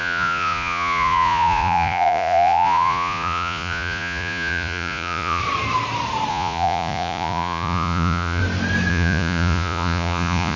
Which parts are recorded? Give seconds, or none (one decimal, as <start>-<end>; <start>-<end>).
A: 5.4-6.3; 8.4-8.9